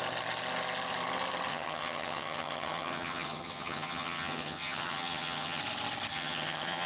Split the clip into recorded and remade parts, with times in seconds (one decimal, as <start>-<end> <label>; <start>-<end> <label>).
0.0-1.5 recorded; 1.5-5.6 remade; 5.6-6.1 recorded; 6.1-6.9 remade